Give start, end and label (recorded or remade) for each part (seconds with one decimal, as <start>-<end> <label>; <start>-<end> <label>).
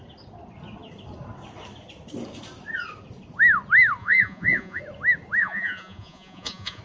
0.0-4.0 recorded; 4.0-4.8 remade; 4.8-5.4 recorded; 5.4-6.8 remade